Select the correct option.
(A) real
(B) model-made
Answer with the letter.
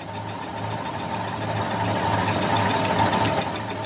A